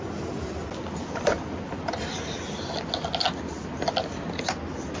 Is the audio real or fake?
real